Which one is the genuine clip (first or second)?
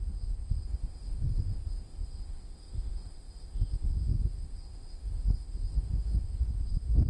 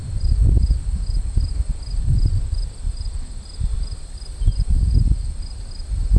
second